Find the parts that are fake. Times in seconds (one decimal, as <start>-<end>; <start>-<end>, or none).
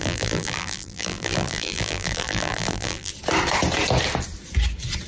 0.0-3.1